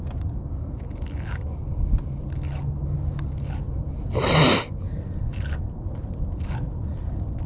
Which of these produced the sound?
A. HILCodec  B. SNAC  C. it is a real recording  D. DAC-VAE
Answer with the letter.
C